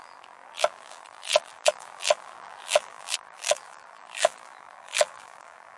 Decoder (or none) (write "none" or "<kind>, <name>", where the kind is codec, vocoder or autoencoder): vocoder, BigVGAN v2